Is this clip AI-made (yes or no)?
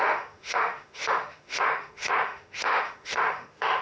yes